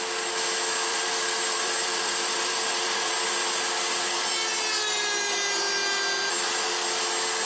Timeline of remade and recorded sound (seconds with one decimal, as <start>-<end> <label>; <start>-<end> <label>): 0.0-0.9 recorded; 0.9-3.1 remade; 3.1-7.5 recorded